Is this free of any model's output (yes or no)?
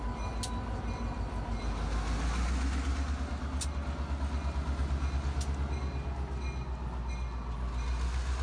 yes